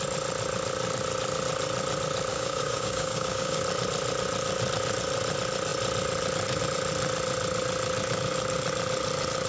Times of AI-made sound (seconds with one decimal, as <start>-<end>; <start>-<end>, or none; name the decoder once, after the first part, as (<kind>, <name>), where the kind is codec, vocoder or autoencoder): 2.3-3.6 (codec, DAC)